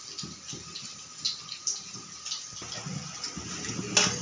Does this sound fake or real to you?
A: real